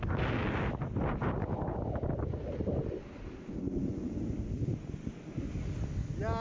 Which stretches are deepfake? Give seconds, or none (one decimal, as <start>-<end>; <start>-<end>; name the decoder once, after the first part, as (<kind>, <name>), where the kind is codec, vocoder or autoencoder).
none